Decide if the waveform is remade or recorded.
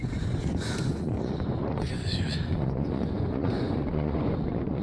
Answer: remade